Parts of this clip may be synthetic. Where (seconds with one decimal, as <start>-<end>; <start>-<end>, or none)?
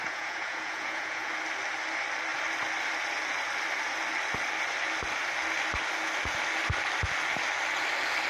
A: 0.0-1.3